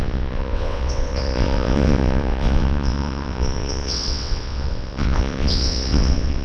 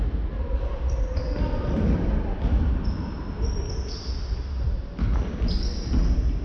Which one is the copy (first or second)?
first